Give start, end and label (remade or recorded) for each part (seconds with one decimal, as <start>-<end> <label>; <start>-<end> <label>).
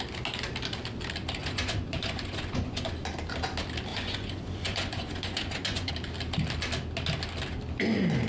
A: 0.0-1.4 recorded; 1.4-2.9 remade; 2.9-3.9 recorded; 3.9-5.9 remade; 5.9-8.3 recorded